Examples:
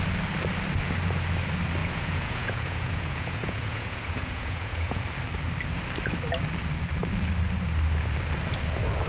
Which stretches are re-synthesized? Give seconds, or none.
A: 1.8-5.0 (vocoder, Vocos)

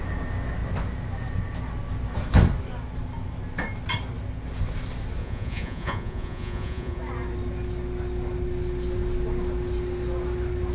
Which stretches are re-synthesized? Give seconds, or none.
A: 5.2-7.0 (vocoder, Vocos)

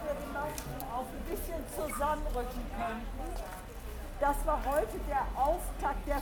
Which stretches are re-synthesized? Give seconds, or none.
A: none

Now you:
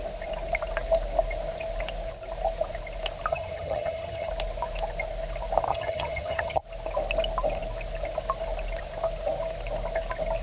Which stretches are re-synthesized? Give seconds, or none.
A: 3.3-4.3 (vocoder, HiFi-GAN); 5.7-6.6

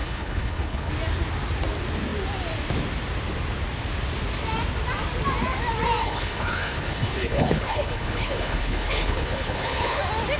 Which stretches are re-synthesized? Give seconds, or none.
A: 0.0-0.9 (codec, HILCodec); 6.0-10.0

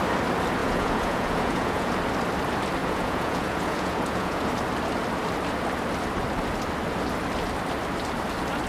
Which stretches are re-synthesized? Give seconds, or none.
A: 0.6-1.9 (vocoder, Vocos); 2.8-4.5

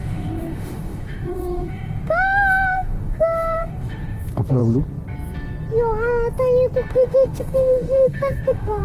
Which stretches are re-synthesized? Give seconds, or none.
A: 0.0-4.6 (autoencoder, DAC-VAE); 6.9-8.8